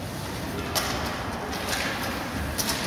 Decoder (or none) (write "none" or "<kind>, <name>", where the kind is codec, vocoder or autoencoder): none